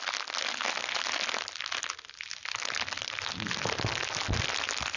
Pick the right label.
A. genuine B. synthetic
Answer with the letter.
A